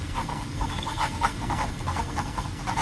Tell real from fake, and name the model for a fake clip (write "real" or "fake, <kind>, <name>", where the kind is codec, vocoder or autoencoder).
fake, codec, SNAC